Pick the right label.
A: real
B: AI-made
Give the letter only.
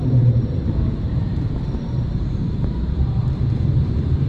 B